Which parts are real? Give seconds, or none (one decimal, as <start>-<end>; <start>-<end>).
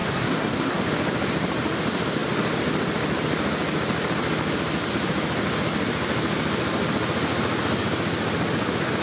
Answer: 0.8-9.0